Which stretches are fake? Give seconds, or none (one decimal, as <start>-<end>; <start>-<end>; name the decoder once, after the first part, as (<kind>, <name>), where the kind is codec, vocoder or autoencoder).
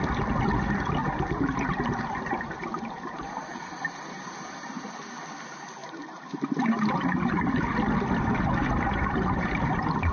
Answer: 1.0-4.9 (vocoder, BigVGAN v2); 5.8-7.7; 8.6-10.1